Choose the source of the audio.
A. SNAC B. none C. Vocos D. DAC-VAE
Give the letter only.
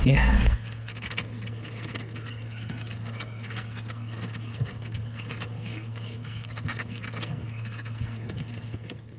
A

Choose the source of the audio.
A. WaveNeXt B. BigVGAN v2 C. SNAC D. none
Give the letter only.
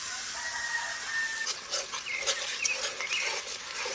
D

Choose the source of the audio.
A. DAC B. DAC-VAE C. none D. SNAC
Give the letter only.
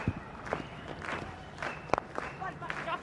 C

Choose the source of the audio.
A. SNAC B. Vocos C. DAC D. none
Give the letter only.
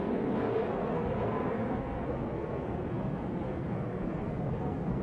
A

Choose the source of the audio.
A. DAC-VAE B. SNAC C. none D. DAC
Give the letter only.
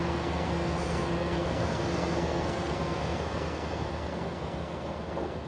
B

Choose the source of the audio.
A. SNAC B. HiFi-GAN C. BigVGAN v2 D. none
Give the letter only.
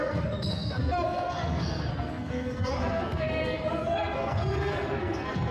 A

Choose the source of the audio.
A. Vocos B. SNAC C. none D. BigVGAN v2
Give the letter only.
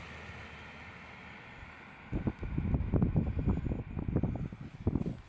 C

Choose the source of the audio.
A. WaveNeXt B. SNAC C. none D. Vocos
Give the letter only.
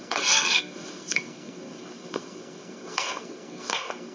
B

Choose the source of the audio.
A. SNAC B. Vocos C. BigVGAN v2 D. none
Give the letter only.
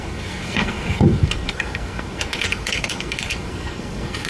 A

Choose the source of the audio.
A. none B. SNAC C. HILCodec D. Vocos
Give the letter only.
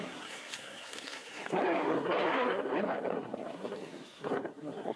B